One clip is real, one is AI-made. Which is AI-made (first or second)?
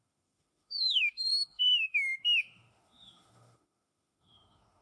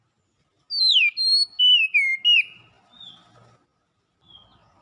first